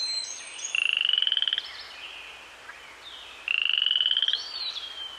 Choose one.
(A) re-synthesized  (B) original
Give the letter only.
B